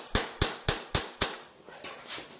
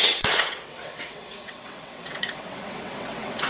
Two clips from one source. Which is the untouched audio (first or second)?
first